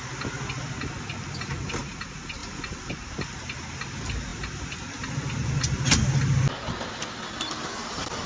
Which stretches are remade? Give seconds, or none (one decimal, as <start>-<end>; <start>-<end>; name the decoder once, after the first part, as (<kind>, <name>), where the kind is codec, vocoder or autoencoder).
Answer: none